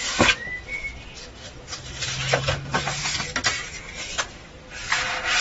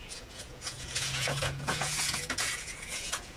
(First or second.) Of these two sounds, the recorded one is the first